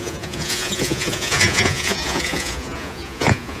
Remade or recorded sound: remade